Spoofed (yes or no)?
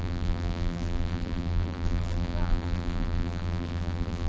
yes